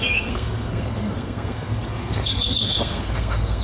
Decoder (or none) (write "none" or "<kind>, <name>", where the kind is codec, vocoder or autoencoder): codec, SNAC